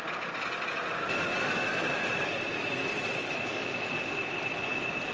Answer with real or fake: real